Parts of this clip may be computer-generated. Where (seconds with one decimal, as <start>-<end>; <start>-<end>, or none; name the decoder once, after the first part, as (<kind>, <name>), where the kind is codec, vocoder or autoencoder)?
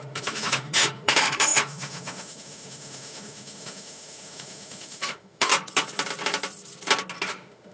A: 0.0-5.5 (autoencoder, DAC-VAE); 7.3-7.7